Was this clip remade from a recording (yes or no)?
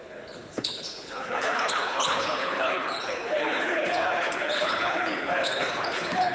yes